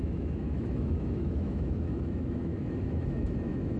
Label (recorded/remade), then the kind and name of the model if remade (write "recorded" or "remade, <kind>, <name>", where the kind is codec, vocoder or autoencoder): remade, autoencoder, DAC-VAE